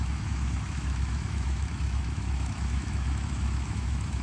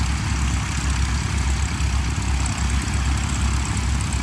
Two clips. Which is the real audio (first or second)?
second